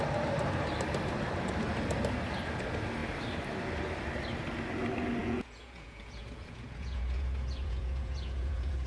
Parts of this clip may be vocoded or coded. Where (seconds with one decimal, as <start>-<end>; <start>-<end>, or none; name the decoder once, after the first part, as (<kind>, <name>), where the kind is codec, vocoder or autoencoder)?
5.2-8.9 (vocoder, Vocos)